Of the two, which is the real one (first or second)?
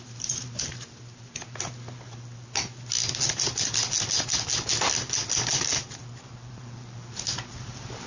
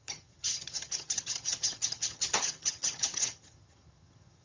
first